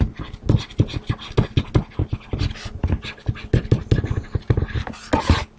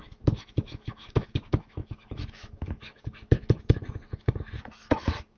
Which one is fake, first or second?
second